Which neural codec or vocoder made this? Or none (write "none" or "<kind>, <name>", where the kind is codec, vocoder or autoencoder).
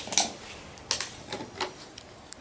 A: none